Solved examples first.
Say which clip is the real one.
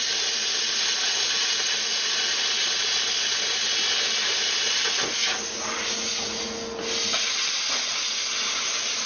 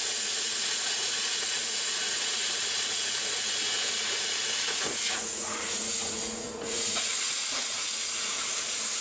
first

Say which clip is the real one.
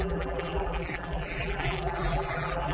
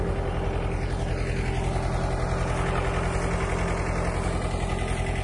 second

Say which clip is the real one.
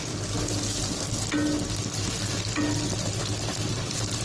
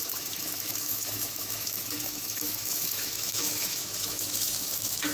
first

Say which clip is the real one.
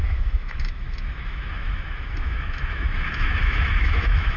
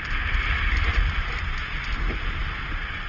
second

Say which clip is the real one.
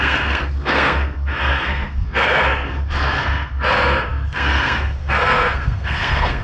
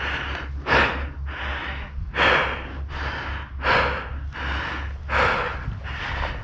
second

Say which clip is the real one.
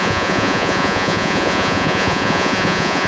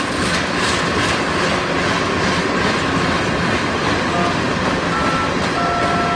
second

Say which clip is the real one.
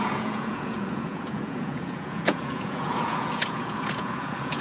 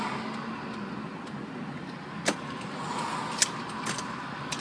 second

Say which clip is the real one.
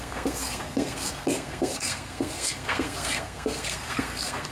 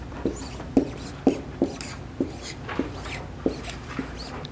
second